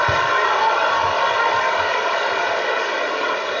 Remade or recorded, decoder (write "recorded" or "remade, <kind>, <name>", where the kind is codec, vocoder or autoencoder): remade, codec, DAC